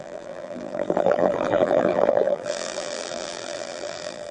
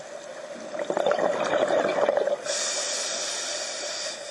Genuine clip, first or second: second